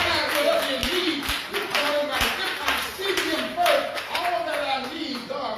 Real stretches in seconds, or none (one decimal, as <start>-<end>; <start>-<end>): 0.0-5.6